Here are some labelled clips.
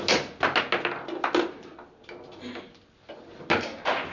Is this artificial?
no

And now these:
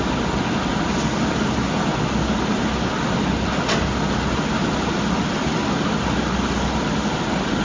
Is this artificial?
no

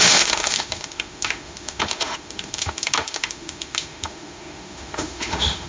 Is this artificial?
yes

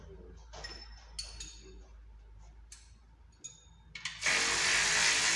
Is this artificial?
no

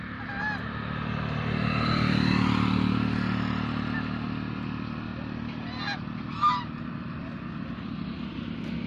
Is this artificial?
no